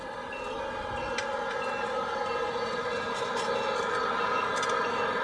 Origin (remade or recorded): recorded